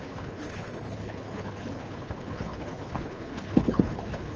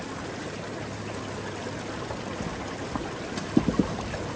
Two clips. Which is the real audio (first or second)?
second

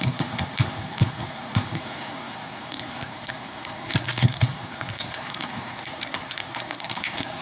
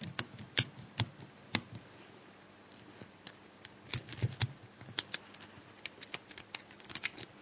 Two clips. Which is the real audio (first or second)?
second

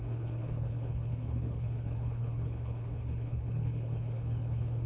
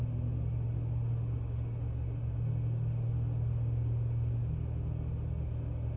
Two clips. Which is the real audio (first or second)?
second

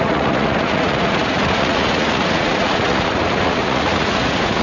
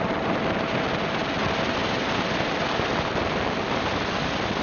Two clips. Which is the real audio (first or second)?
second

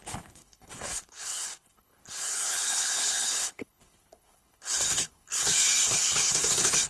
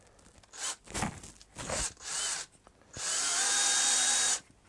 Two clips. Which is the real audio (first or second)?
second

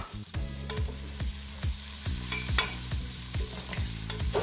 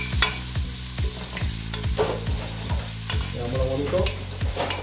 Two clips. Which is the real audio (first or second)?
second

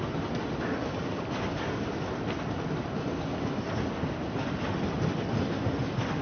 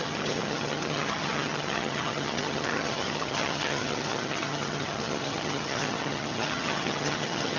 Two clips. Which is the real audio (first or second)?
first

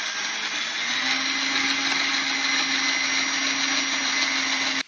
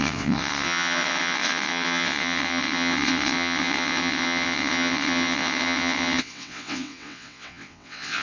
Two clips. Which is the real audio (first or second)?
first